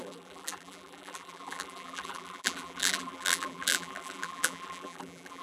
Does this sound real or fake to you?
fake